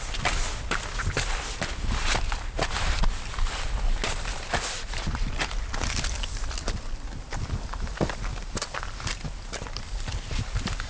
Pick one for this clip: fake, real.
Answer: real